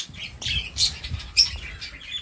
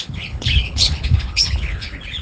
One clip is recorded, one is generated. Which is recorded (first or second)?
first